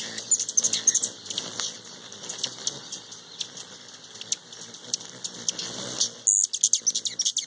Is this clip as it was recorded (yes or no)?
yes